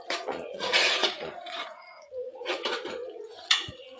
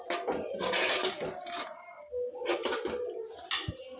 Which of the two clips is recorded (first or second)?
second